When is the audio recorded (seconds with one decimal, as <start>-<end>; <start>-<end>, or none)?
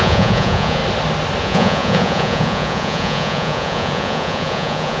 0.8-1.4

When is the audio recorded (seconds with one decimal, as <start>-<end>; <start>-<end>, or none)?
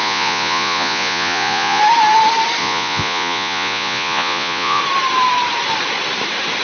1.8-2.6; 4.8-6.6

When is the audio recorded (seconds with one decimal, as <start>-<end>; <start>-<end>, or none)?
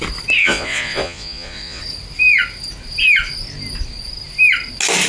0.0-0.4; 1.8-5.1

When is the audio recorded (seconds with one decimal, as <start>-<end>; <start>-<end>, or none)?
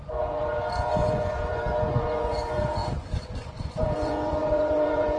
none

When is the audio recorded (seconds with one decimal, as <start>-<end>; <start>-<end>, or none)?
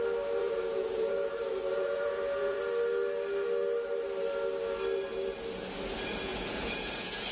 0.0-0.4; 2.6-6.3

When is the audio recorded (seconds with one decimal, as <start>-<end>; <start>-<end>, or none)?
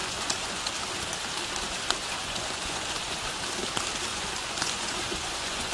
0.7-2.0; 3.3-4.1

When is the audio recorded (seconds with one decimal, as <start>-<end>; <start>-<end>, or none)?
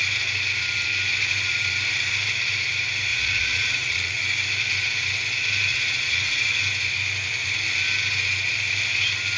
0.0-3.1; 4.2-5.7; 6.6-9.4